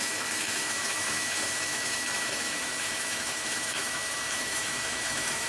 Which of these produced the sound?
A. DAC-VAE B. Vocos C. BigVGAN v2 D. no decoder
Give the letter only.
A